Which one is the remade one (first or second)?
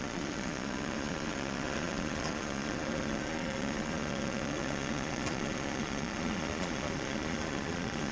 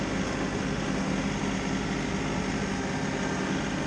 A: first